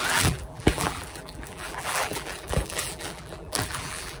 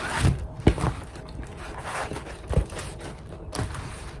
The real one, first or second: second